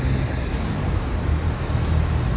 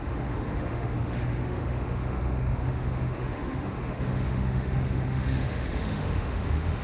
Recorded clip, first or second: first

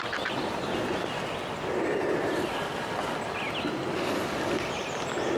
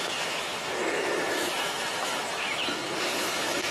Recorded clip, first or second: first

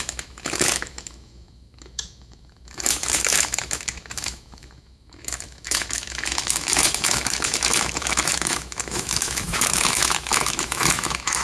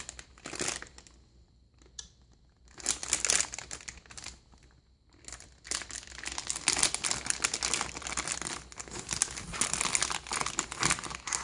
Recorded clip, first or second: second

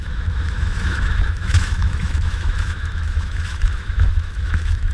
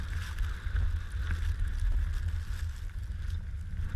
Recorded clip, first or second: second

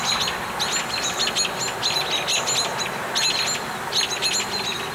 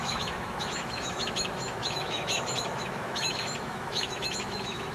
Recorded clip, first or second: first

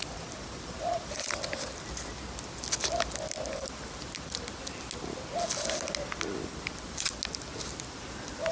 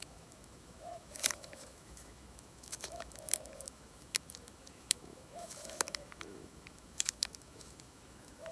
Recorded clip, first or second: first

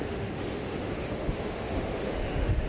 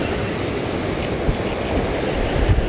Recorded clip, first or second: second